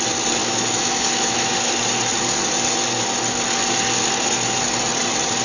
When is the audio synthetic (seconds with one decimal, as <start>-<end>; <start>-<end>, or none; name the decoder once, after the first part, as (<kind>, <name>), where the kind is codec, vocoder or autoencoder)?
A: 0.4-1.5 (autoencoder, DAC-VAE)